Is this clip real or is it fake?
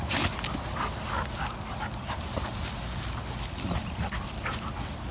real